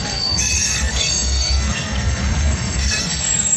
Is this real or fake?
fake